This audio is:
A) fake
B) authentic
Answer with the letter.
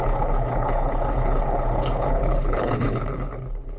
A